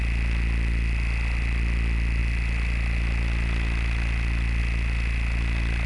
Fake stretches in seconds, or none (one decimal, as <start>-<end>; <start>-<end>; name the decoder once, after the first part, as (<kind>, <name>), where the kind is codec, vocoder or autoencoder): none